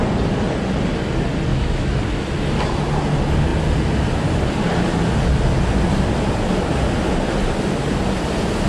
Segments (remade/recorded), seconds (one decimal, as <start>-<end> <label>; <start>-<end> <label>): 0.0-1.5 recorded; 1.5-2.0 remade; 2.0-8.7 recorded